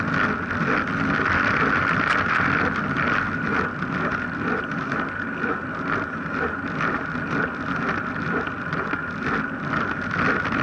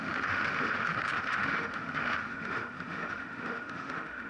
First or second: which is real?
first